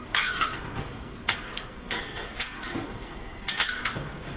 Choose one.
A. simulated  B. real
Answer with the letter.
A